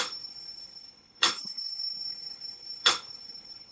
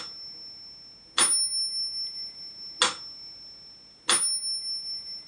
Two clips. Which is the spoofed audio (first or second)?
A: first